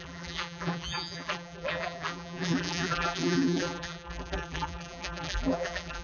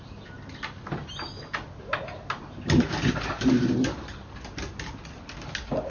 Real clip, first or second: second